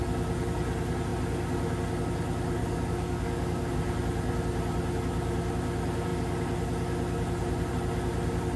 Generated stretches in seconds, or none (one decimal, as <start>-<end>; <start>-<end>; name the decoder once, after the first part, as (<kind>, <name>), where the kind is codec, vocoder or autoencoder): 2.6-3.7 (codec, DAC)